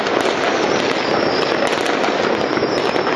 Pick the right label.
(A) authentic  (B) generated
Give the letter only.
A